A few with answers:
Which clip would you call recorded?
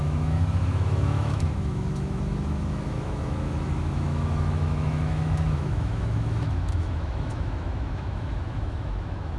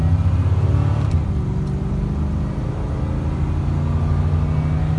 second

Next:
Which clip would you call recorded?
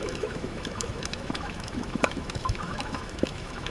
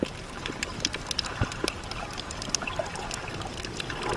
second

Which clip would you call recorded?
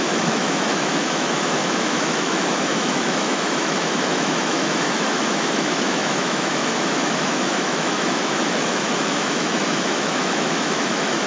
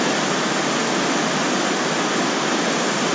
second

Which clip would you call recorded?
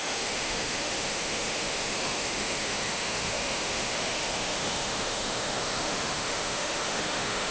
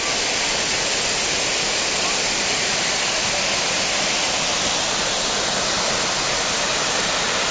second